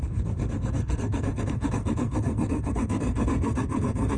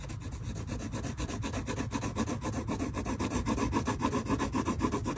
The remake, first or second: first